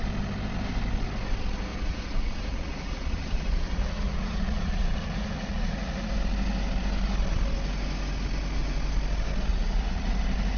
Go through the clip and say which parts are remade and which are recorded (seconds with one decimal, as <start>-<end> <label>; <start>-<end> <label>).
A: 0.0-1.7 recorded; 1.7-6.1 remade; 6.1-9.5 recorded; 9.5-10.1 remade; 10.1-10.6 recorded